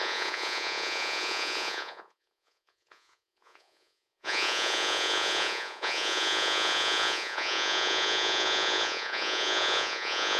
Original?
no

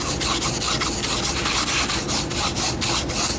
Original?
yes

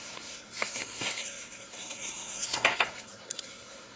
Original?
no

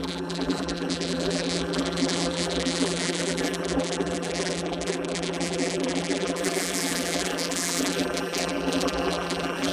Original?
no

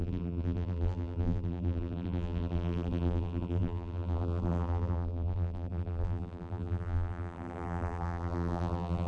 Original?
no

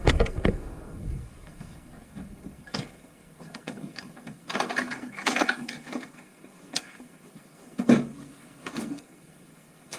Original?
no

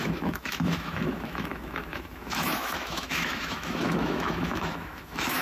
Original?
no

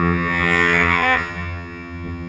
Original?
no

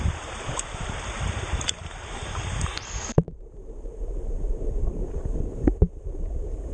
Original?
no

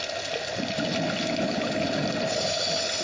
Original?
yes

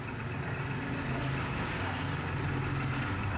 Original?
yes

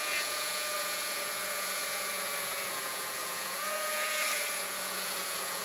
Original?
no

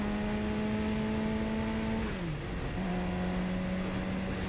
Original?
yes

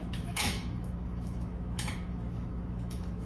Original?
no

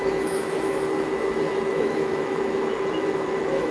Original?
no